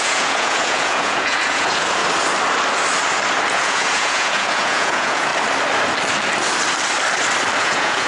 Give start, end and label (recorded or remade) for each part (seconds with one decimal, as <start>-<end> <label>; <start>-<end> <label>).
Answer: 0.0-2.0 remade; 2.0-3.5 recorded; 3.5-5.3 remade; 5.3-7.6 recorded; 7.6-8.1 remade